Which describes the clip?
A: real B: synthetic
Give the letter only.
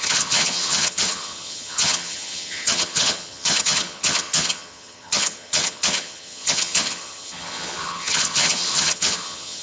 B